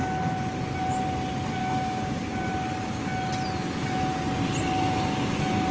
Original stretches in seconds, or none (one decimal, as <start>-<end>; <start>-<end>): 0.0-1.6; 2.5-5.7